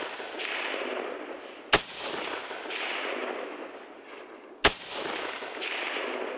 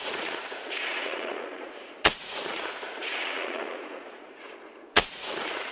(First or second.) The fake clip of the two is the second